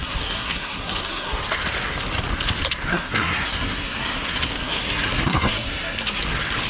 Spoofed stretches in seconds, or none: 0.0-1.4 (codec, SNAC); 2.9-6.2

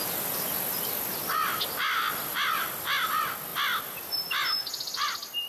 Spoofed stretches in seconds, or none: none

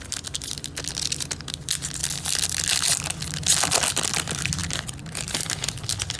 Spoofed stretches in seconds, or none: none